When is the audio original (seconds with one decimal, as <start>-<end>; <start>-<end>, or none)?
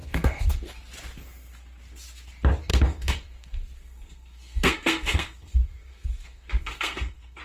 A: 0.7-2.7